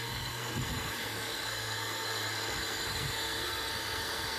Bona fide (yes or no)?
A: no